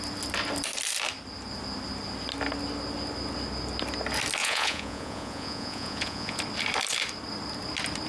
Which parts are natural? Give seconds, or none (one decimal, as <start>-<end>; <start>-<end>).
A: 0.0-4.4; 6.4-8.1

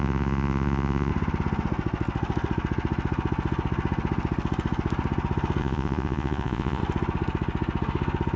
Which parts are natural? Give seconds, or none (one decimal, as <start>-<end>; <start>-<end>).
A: 1.1-5.6; 6.8-8.4

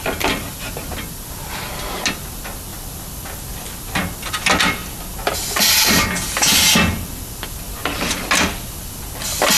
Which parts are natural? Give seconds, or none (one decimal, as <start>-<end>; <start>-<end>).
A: 0.0-9.6